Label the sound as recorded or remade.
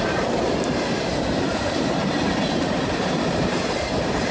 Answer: remade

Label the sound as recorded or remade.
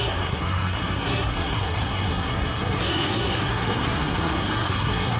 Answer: remade